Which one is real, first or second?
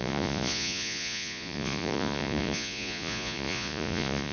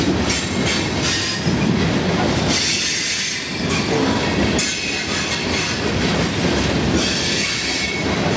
second